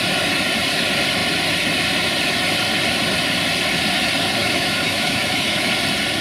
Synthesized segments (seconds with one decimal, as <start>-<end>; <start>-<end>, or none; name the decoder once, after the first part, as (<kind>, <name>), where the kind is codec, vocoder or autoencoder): 4.4-5.7 (autoencoder, DAC-VAE)